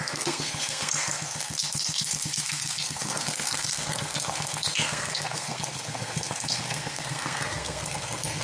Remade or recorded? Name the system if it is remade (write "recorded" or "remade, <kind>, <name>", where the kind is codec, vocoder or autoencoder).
remade, codec, SNAC